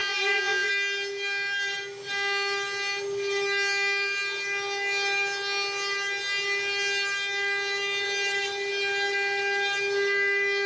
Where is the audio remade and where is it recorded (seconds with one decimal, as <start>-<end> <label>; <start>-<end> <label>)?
0.0-0.7 remade; 0.7-10.7 recorded

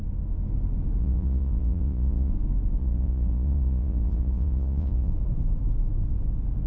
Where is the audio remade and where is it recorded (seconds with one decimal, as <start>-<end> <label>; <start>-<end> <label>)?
0.0-1.0 recorded; 1.0-2.3 remade; 2.3-2.8 recorded; 2.8-5.1 remade; 5.1-6.7 recorded

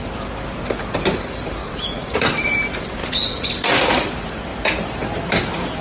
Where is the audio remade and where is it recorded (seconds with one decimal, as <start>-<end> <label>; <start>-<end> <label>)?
0.0-1.6 recorded; 1.6-2.3 remade; 2.3-3.0 recorded; 3.0-3.5 remade; 3.5-5.8 recorded